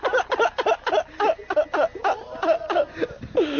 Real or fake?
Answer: real